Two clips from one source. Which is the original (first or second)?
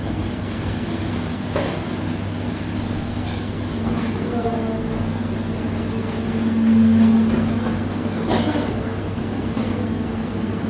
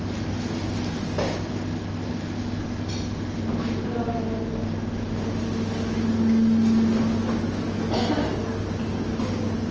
second